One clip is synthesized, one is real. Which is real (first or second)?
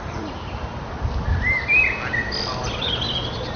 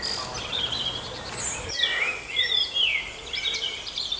first